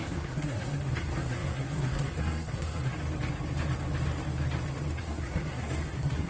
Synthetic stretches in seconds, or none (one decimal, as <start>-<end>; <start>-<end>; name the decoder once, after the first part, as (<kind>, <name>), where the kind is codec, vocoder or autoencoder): 0.0-2.9 (codec, SNAC); 5.0-6.3